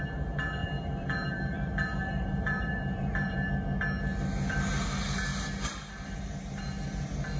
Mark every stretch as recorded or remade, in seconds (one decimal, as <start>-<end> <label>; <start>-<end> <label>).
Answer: 0.0-0.6 recorded; 0.6-3.5 remade; 3.5-5.3 recorded; 5.3-6.6 remade; 6.6-7.4 recorded